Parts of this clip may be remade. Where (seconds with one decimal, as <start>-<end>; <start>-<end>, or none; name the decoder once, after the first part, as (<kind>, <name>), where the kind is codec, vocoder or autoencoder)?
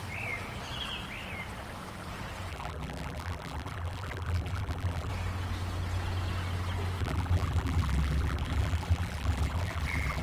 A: 2.5-5.1 (vocoder, BigVGAN v2); 7.0-10.2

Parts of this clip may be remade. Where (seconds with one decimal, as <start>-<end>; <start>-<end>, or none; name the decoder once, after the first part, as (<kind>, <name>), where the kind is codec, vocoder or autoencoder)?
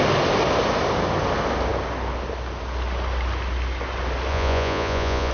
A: 4.3-5.3 (vocoder, Vocos)